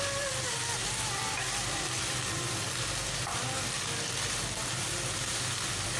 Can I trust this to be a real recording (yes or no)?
yes